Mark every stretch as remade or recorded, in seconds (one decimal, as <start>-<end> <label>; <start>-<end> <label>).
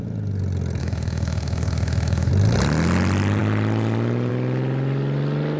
0.0-0.8 recorded; 0.8-2.3 remade; 2.3-5.6 recorded